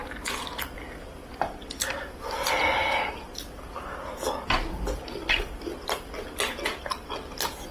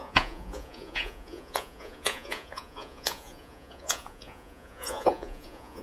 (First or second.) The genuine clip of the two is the first